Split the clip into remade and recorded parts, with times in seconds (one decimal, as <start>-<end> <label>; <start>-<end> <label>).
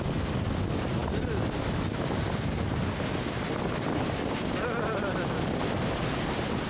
0.0-6.7 recorded